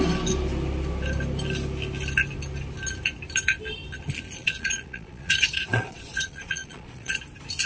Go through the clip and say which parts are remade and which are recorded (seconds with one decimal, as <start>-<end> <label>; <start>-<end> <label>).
0.0-4.4 recorded; 4.4-7.2 remade; 7.2-7.7 recorded